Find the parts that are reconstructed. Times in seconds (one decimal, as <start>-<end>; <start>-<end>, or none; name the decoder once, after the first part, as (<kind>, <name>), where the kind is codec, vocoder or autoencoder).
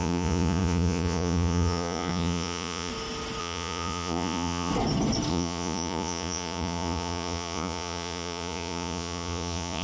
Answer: 0.0-2.9 (vocoder, Vocos); 3.4-4.7; 5.3-9.8